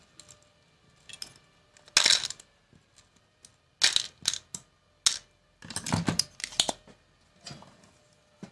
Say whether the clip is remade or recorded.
recorded